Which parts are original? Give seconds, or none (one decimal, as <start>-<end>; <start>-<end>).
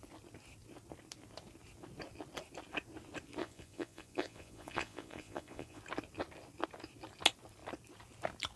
0.0-3.4; 5.8-8.6